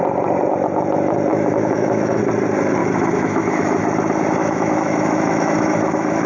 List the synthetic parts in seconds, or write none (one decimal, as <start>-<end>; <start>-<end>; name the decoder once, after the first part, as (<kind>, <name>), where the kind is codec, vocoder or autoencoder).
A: 1.3-2.2 (autoencoder, DAC-VAE); 2.8-3.8; 4.4-6.3